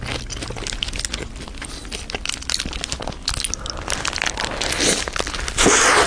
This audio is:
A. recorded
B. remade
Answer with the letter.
A